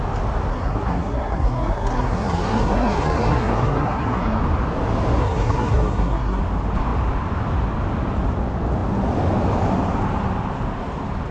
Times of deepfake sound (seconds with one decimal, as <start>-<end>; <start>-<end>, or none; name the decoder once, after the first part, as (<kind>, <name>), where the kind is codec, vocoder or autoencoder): 0.5-4.4 (codec, SNAC); 5.2-6.4